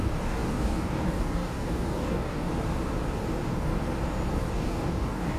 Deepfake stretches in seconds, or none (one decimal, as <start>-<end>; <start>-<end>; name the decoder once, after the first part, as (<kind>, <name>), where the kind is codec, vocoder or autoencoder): 0.0-2.5 (codec, DAC); 3.2-3.7; 4.5-5.4